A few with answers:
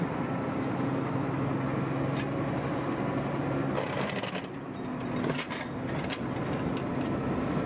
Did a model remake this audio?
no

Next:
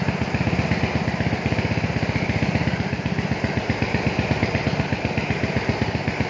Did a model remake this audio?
no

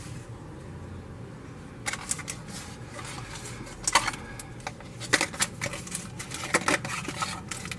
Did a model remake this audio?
no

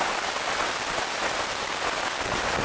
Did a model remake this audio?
no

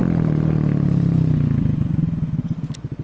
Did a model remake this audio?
no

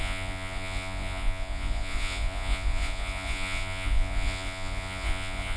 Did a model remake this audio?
yes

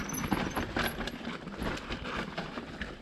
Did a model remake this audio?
no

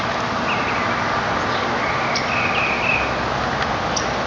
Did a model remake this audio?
no